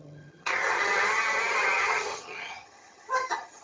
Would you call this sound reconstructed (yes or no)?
yes